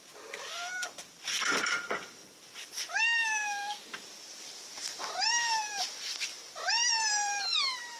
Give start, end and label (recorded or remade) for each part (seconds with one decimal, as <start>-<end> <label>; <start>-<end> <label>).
0.0-2.5 remade; 2.5-4.4 recorded; 4.4-8.0 remade